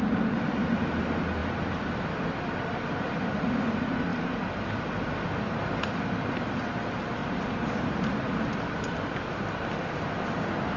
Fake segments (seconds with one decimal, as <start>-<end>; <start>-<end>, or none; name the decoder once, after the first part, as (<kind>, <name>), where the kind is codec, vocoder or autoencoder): 1.4-3.6 (vocoder, BigVGAN v2); 4.1-5.1